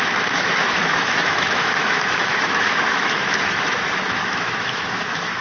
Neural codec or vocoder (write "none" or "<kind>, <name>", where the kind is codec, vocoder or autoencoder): autoencoder, DAC-VAE